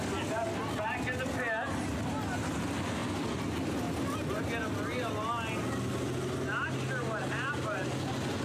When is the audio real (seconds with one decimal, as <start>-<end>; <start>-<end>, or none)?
0.0-8.4